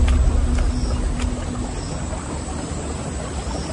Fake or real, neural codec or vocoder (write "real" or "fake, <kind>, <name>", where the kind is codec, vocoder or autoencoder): real